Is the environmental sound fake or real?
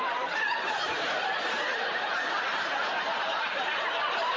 fake